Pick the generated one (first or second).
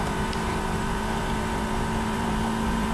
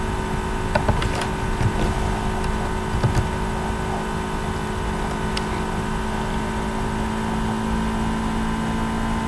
first